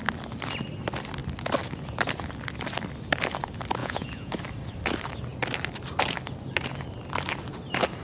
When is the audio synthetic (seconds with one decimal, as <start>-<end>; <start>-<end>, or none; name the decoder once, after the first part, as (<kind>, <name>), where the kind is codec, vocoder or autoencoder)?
3.8-4.3 (vocoder, Vocos)

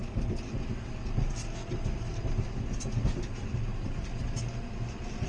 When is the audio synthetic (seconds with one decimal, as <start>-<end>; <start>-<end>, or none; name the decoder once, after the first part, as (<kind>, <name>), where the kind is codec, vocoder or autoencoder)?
none